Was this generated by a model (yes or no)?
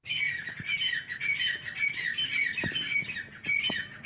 no